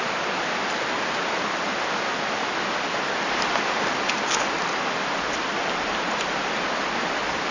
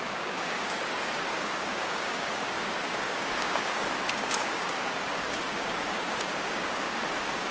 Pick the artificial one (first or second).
second